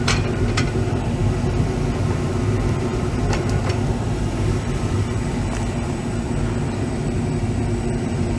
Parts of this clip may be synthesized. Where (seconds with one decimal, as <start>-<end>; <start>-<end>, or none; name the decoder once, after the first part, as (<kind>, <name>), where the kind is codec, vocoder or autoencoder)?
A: 0.0-8.4 (vocoder, BigVGAN v2)